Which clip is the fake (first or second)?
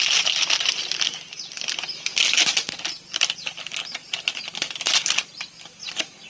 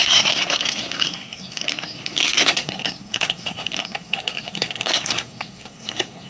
second